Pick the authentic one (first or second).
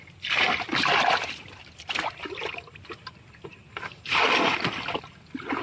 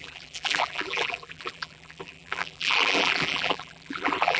first